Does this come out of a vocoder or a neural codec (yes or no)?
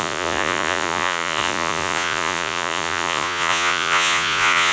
yes